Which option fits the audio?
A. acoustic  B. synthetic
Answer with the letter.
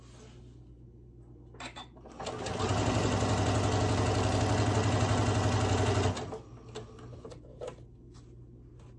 A